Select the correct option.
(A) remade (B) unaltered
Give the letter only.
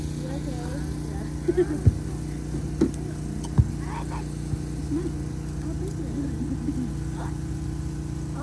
B